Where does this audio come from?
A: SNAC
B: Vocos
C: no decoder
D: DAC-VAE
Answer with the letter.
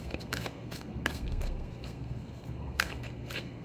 A